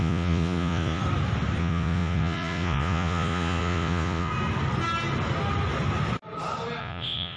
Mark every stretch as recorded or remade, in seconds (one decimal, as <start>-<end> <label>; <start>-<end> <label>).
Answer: 0.0-1.0 remade; 1.0-1.6 recorded; 1.6-4.3 remade; 4.3-6.8 recorded; 6.8-7.4 remade